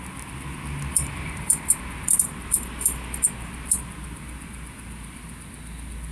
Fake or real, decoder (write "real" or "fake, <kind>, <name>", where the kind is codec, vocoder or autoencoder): real